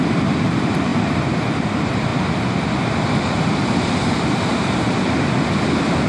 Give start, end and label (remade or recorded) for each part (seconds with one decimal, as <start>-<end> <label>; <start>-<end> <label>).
0.0-2.1 remade; 2.1-3.2 recorded; 3.2-4.5 remade; 4.5-6.1 recorded